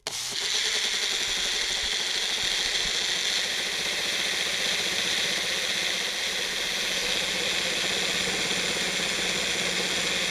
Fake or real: real